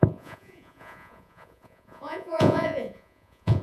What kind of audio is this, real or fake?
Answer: fake